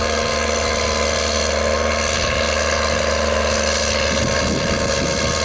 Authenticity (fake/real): real